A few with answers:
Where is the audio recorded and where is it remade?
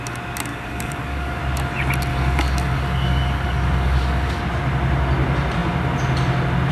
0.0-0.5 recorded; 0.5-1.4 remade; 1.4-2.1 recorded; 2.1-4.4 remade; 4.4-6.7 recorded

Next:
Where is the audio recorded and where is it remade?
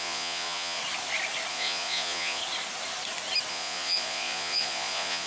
0.0-0.8 remade; 0.8-1.5 recorded; 1.5-2.4 remade; 2.4-3.5 recorded; 3.5-5.3 remade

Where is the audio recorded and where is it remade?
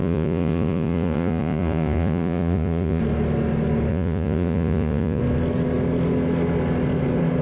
0.0-3.0 remade; 3.0-3.9 recorded; 3.9-5.2 remade; 5.2-7.4 recorded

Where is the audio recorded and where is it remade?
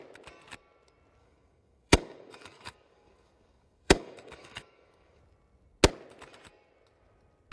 0.0-1.2 recorded; 1.2-5.2 remade; 5.2-7.5 recorded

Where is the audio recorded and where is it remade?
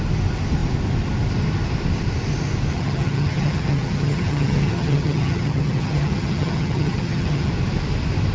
0.0-2.7 recorded; 2.7-7.5 remade; 7.5-8.3 recorded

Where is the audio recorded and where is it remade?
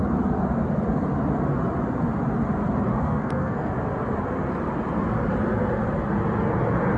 0.0-2.9 recorded; 2.9-3.7 remade; 3.7-7.0 recorded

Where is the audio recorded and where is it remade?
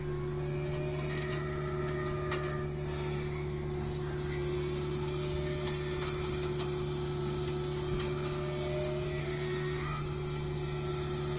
0.0-9.2 recorded; 9.2-10.0 remade; 10.0-11.4 recorded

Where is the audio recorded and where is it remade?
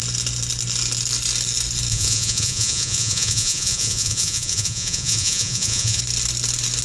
0.0-1.9 recorded; 1.9-6.0 remade; 6.0-6.8 recorded